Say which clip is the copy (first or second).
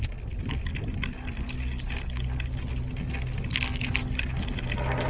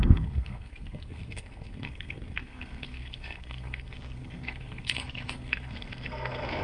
second